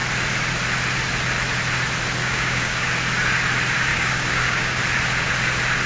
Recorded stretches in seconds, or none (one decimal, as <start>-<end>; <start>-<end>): 0.0-2.2; 2.9-3.9; 4.8-5.9